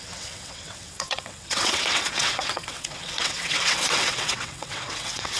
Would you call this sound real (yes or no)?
no